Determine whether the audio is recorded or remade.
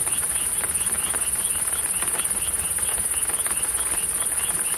recorded